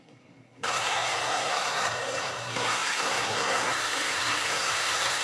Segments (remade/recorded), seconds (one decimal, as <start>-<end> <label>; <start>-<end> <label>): 0.0-5.2 remade